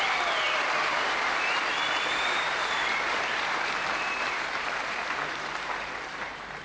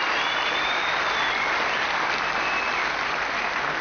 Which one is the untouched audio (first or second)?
second